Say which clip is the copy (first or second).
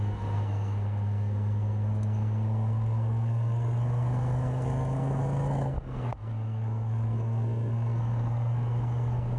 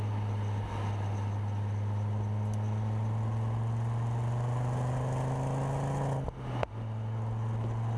first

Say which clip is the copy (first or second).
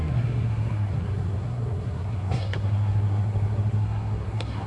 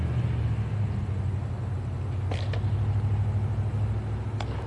first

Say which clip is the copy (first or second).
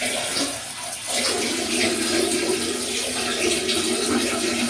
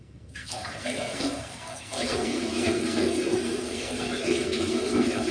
second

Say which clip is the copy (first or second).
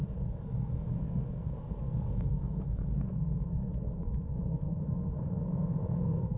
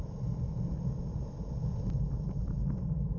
first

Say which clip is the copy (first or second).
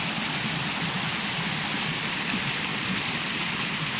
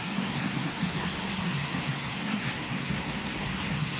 second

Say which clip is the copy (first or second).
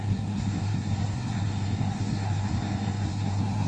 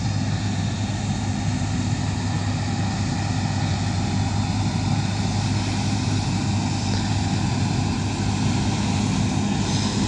first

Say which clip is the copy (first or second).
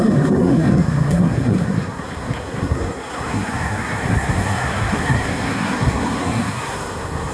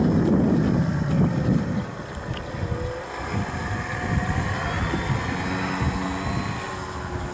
first